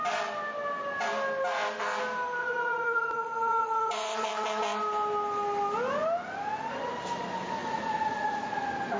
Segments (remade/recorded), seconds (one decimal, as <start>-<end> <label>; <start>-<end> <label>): 0.0-2.4 recorded; 2.4-4.6 remade; 4.6-7.6 recorded; 7.6-8.6 remade; 8.6-9.0 recorded